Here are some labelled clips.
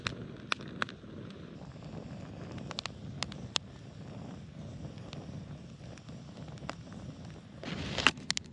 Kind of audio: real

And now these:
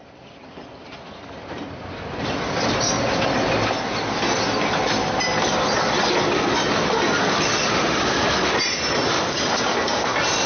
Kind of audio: real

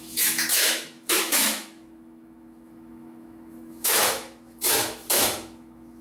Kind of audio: fake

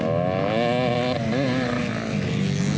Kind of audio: real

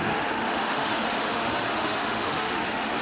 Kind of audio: fake